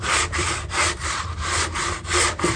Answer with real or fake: real